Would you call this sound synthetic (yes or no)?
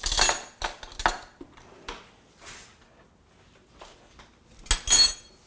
no